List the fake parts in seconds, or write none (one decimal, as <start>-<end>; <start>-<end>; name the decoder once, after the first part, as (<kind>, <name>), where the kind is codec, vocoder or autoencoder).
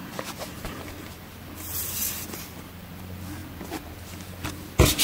none